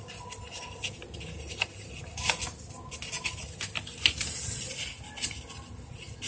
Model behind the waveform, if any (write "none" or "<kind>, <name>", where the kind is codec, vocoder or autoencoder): none